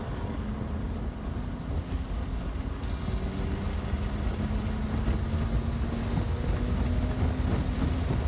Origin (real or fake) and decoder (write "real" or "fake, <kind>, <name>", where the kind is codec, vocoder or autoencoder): real